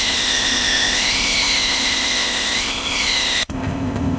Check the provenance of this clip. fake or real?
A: fake